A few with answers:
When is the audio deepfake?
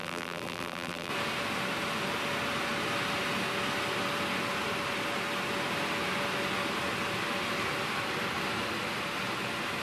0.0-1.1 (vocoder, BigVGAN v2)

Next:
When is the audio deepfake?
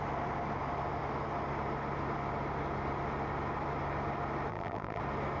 4.5-5.0 (vocoder, BigVGAN v2)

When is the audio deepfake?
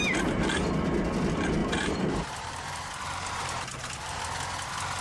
1.6-4.2 (vocoder, BigVGAN v2)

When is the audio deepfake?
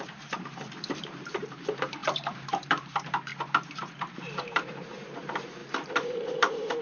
0.0-3.3 (vocoder, BigVGAN v2); 4.2-6.8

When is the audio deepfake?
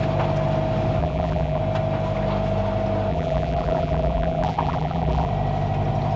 1.0-1.6 (vocoder, BigVGAN v2); 3.1-5.3